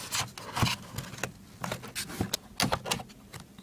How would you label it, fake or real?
real